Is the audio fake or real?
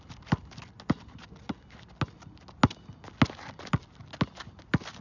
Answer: real